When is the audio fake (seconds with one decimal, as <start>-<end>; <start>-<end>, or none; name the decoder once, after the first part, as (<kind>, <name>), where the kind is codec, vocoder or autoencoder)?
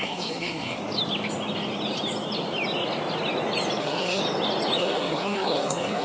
0.0-0.8 (codec, SNAC); 3.8-4.2; 4.8-6.0